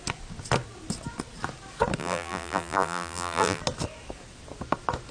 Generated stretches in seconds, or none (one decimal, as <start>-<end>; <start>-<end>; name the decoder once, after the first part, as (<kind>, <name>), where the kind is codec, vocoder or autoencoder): 2.0-3.6 (vocoder, BigVGAN v2)